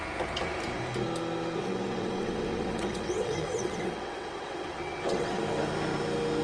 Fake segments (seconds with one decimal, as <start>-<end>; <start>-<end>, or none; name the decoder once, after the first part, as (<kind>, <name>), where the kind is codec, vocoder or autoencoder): 1.6-5.4 (vocoder, WaveNeXt)